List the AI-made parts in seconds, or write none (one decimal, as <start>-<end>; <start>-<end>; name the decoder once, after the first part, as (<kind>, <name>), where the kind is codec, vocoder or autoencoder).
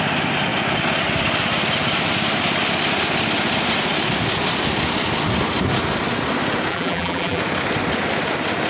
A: 6.7-7.4 (vocoder, BigVGAN v2)